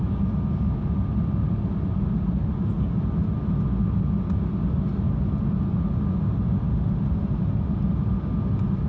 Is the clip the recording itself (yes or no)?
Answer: yes